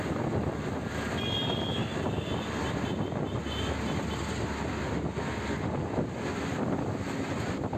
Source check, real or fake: real